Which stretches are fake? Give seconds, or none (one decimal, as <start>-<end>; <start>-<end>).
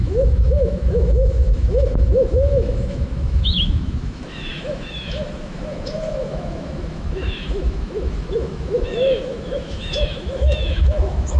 0.0-11.4